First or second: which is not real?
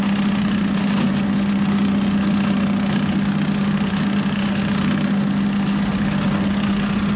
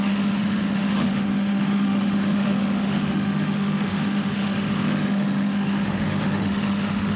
second